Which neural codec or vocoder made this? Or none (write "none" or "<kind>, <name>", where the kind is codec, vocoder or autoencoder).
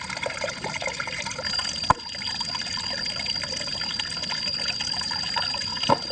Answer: vocoder, BigVGAN v2